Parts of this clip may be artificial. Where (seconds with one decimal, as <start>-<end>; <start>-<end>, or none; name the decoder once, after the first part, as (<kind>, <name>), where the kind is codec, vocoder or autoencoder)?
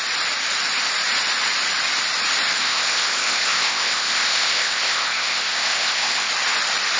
2.6-6.3 (codec, ZipCodec)